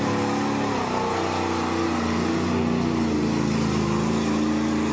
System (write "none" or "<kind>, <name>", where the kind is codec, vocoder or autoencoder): none